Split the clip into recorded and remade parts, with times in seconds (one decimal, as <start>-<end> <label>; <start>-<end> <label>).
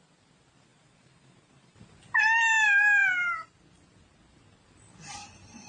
0.0-0.7 recorded; 0.7-2.2 remade; 2.2-5.7 recorded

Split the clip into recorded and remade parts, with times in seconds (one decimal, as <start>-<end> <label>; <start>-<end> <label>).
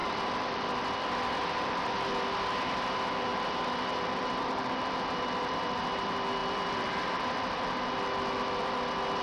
0.0-2.1 remade; 2.1-3.3 recorded; 3.3-4.3 remade; 4.3-6.4 recorded; 6.4-7.7 remade; 7.7-9.2 recorded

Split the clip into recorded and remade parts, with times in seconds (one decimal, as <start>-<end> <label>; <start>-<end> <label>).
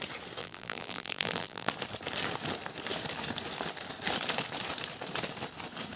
0.0-0.4 recorded; 0.4-1.7 remade; 1.7-6.0 recorded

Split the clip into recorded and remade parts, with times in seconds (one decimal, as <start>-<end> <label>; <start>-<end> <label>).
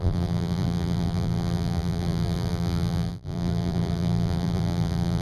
0.0-5.2 remade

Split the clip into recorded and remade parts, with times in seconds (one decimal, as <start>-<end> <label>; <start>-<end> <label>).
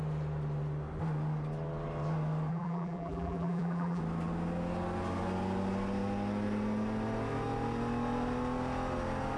0.0-2.5 recorded; 2.5-4.0 remade; 4.0-9.4 recorded